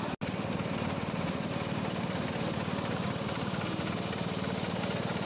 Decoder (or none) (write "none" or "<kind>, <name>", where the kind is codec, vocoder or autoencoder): none